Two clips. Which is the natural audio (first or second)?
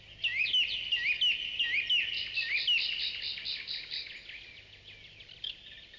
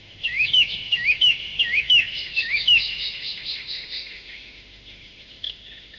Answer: first